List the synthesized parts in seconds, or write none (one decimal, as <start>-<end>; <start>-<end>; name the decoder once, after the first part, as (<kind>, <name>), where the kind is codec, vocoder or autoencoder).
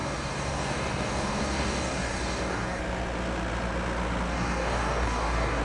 0.0-2.8 (codec, DAC); 4.3-5.6